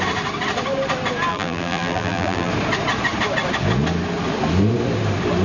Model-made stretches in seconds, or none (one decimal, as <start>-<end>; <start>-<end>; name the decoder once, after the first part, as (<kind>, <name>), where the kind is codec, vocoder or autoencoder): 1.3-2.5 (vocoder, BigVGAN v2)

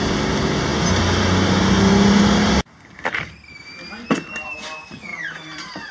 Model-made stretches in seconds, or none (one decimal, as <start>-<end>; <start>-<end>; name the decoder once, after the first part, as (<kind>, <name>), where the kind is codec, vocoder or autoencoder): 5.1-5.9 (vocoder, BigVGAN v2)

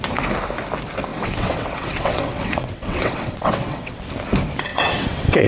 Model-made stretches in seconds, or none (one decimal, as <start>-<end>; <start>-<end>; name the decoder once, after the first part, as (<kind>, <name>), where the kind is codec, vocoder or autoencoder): 1.1-4.0 (vocoder, WaveNeXt); 4.7-5.5

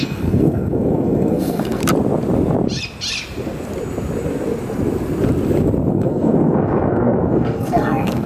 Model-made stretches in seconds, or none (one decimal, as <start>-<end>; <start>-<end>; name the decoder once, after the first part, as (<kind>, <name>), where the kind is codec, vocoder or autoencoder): 0.0-1.8 (codec, SNAC); 5.9-8.3

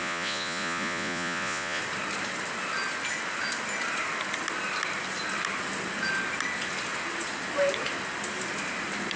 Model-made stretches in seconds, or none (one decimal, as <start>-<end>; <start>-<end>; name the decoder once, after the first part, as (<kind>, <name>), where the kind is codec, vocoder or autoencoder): 0.0-1.8 (vocoder, Vocos)

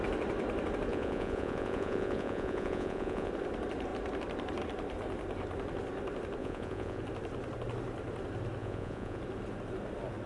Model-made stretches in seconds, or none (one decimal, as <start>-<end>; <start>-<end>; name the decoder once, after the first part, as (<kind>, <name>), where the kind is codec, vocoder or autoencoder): 0.9-3.3 (vocoder, Vocos); 6.4-7.0; 8.6-9.2

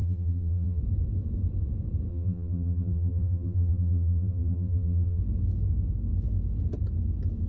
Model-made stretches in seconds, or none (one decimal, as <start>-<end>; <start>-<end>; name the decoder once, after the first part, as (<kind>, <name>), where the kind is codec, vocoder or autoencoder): 0.0-0.8 (vocoder, BigVGAN v2); 2.1-5.2

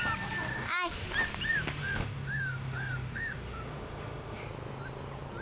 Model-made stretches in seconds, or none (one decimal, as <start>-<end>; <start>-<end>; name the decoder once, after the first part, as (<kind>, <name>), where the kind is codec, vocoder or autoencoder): 0.5-1.0 (autoencoder, DAC-VAE); 1.8-4.4